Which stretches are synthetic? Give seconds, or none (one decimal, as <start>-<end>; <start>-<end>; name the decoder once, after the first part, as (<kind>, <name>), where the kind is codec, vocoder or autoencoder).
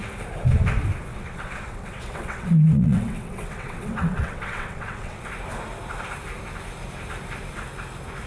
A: 1.1-5.2 (vocoder, WaveNeXt)